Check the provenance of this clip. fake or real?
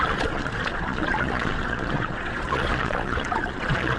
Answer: fake